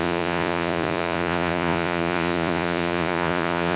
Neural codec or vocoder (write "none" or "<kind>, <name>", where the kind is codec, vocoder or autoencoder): vocoder, Vocos